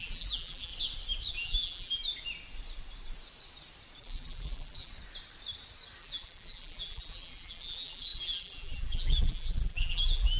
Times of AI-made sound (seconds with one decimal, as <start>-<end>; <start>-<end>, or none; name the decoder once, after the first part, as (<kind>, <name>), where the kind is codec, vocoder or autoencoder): 0.0-0.7 (vocoder, BigVGAN v2); 1.3-2.0; 4.0-4.9; 6.0-10.4